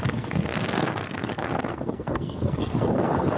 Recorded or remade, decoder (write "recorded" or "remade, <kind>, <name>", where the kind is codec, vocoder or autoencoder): remade, codec, SNAC